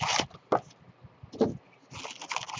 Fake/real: real